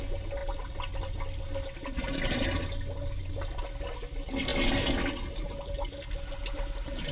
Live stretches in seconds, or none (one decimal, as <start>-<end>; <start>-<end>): 0.0-7.1